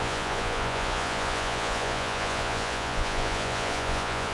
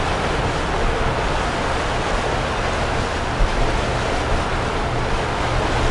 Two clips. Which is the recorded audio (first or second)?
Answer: second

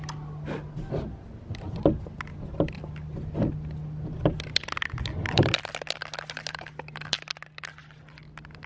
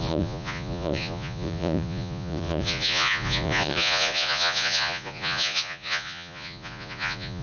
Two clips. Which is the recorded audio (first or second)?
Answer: first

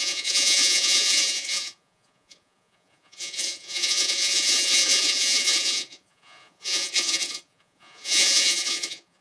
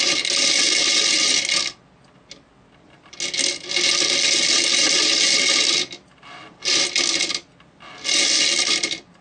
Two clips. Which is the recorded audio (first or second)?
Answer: second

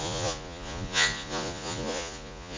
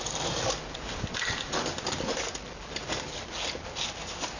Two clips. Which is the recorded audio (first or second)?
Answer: second